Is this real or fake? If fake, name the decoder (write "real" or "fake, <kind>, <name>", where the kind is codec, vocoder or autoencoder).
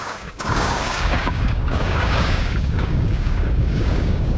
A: fake, codec, DAC